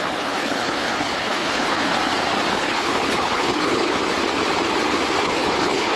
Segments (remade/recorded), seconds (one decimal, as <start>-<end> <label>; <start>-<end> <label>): 0.0-1.9 remade; 1.9-2.5 recorded; 2.5-4.0 remade; 4.0-5.2 recorded; 5.2-6.0 remade